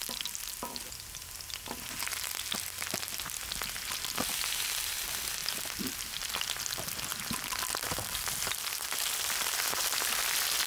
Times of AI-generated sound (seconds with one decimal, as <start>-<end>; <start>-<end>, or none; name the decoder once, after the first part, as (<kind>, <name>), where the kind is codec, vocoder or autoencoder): 5.4-6.3 (vocoder, BigVGAN v2)

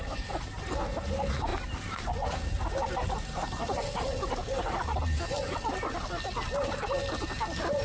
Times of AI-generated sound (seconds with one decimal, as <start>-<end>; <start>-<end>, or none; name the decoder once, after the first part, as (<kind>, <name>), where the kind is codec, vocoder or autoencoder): none

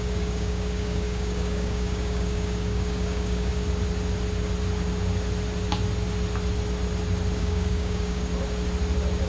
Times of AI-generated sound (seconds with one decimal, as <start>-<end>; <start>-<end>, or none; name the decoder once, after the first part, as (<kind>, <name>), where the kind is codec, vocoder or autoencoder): 0.0-3.5 (codec, DAC); 7.4-8.3

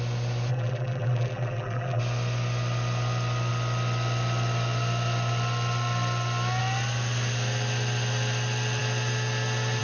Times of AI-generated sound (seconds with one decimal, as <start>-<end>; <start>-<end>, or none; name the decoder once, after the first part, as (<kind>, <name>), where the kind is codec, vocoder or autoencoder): 0.5-2.0 (vocoder, BigVGAN v2)